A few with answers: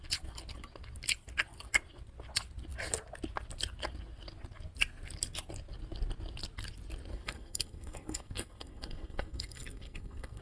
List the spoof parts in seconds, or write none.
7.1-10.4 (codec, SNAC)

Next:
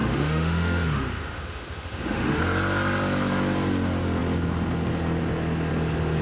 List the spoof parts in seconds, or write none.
0.0-2.4 (autoencoder, DAC-VAE)